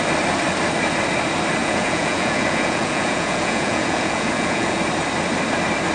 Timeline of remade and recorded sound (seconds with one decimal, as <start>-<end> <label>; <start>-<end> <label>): 0.0-1.6 recorded; 1.6-4.8 remade; 4.8-5.9 recorded